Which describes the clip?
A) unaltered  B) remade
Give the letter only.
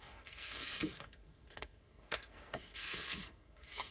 B